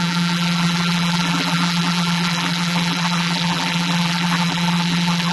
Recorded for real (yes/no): no